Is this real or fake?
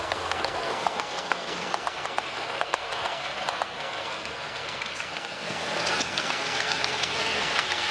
fake